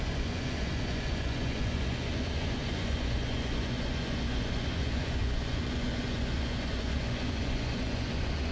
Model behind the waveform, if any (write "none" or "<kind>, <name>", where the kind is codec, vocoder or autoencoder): vocoder, Vocos